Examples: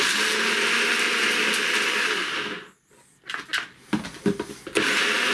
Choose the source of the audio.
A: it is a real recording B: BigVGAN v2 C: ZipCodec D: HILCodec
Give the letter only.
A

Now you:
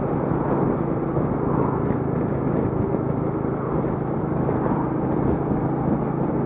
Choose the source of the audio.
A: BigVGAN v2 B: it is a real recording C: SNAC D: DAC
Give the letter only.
B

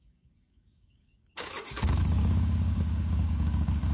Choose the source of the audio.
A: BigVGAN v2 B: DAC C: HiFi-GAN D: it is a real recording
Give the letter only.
B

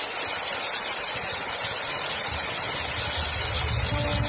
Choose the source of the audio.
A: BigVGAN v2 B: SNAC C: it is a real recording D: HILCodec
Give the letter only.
C